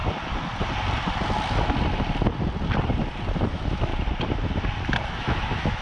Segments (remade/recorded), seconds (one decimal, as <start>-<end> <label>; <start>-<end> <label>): 0.0-3.5 recorded; 3.5-3.9 remade; 3.9-5.1 recorded; 5.1-5.8 remade